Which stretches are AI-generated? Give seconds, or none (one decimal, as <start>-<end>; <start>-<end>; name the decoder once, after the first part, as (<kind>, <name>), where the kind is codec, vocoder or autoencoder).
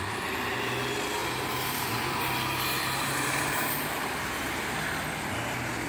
1.2-4.7 (vocoder, BigVGAN v2)